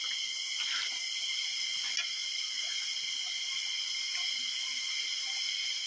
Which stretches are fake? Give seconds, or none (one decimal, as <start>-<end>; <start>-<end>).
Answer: 2.2-4.3